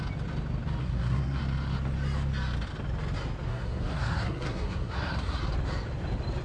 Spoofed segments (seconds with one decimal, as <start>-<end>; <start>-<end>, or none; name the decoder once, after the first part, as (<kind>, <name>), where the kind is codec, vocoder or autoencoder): 0.8-1.4 (codec, SNAC); 3.5-5.4